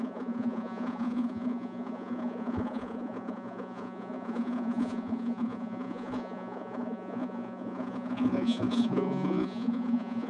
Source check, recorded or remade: remade